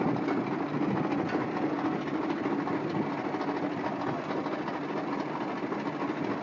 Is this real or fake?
real